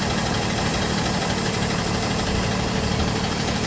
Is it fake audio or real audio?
fake